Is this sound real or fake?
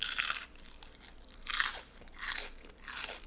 real